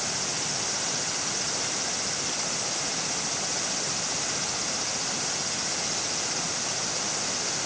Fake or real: real